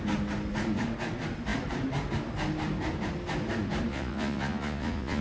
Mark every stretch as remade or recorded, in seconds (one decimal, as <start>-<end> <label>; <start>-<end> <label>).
0.0-3.9 recorded; 3.9-5.2 remade